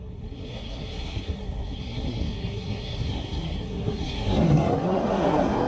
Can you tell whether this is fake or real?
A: fake